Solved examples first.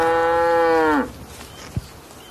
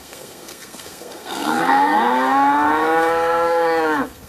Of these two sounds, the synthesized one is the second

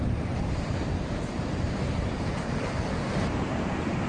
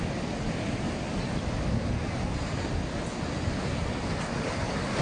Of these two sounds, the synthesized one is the first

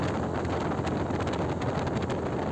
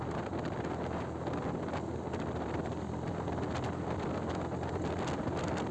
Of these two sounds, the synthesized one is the second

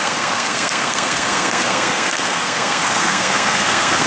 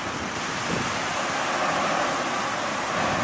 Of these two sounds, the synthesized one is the first